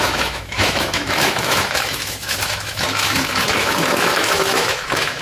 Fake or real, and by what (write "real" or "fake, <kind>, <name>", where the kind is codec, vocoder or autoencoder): fake, autoencoder, DAC-VAE